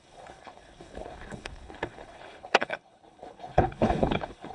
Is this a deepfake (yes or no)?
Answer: yes